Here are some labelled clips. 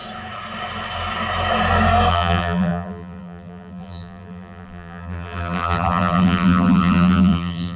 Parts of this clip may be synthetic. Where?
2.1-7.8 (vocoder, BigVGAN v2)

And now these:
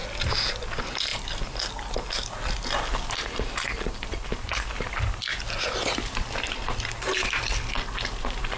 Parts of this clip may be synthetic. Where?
1.1-2.1 (vocoder, BigVGAN v2); 5.3-7.5